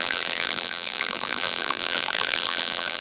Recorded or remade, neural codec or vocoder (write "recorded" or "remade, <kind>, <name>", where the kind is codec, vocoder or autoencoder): remade, vocoder, BigVGAN v2